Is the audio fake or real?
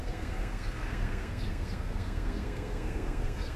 fake